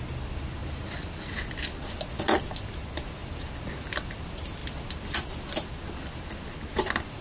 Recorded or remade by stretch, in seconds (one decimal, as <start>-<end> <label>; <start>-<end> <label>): 0.0-7.2 recorded

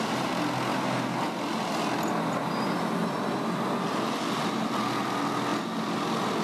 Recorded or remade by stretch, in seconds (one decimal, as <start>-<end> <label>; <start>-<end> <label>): 0.0-6.4 recorded

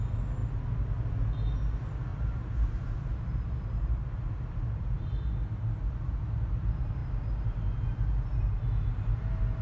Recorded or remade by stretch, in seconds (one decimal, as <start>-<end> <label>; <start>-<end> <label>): 0.0-2.1 recorded; 2.1-5.2 remade; 5.2-9.6 recorded

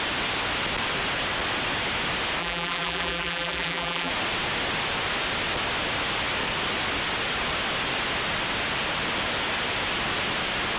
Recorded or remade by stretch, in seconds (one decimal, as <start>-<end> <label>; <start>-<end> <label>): 0.0-2.4 recorded; 2.4-4.1 remade; 4.1-10.8 recorded

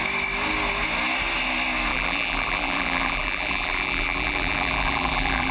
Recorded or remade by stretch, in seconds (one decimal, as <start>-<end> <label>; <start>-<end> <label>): 0.0-1.9 recorded; 1.9-5.5 remade

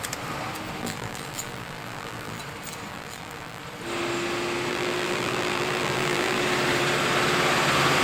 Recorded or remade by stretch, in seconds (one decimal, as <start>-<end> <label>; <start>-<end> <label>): 0.0-0.8 recorded; 0.8-2.4 remade; 2.4-2.9 recorded; 2.9-3.6 remade; 3.6-4.7 recorded; 4.7-6.4 remade; 6.4-8.0 recorded

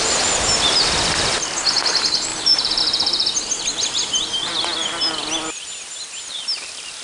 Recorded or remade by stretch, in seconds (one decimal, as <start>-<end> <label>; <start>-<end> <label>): 0.0-2.3 recorded; 2.3-2.8 remade; 2.8-7.0 recorded

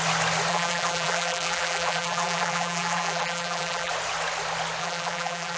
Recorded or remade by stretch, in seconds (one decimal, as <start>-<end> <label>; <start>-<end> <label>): 0.0-0.5 recorded; 0.5-3.9 remade; 3.9-4.8 recorded; 4.8-5.6 remade